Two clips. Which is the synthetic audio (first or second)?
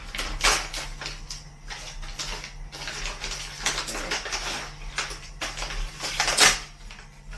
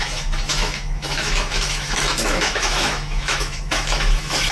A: second